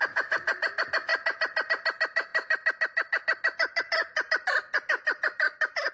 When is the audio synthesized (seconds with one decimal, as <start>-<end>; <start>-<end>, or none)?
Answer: none